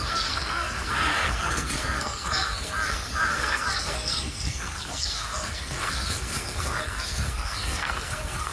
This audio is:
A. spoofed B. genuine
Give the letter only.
A